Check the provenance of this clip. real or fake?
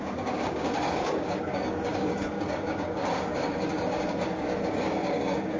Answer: fake